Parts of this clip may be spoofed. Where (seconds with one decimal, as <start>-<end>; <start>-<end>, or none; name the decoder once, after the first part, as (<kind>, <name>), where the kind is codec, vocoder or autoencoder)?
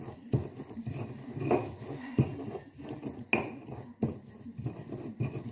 2.3-3.1 (vocoder, BigVGAN v2)